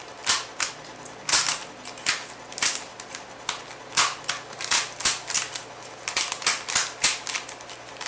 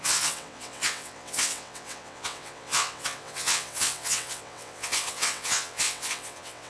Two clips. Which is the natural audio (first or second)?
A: first